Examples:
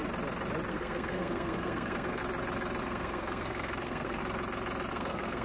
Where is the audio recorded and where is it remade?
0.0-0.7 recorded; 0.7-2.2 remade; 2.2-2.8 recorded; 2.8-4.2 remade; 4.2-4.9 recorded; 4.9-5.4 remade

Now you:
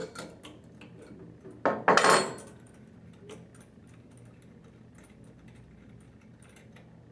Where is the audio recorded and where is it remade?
0.0-7.1 recorded

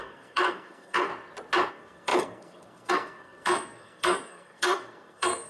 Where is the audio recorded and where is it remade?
0.0-1.1 remade; 1.1-1.7 recorded; 1.7-5.5 remade

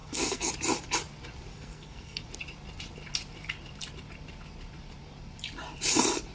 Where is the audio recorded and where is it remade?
0.0-0.5 remade; 0.5-1.5 recorded; 1.5-2.2 remade; 2.2-6.3 recorded

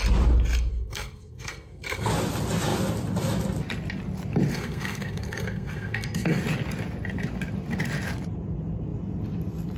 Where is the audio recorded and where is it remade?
0.0-0.7 recorded; 0.7-2.1 remade; 2.1-4.5 recorded; 4.5-6.4 remade; 6.4-9.8 recorded

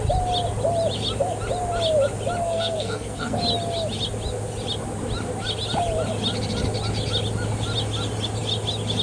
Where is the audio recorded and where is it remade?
0.0-2.4 recorded; 2.4-3.4 remade; 3.4-9.0 recorded

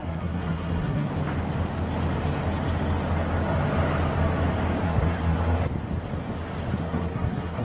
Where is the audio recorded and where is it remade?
0.0-1.1 remade; 1.1-4.8 recorded; 4.8-5.7 remade; 5.7-6.8 recorded; 6.8-7.6 remade

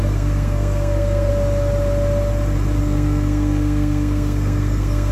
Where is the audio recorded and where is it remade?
0.0-1.3 remade; 1.3-2.8 recorded; 2.8-5.1 remade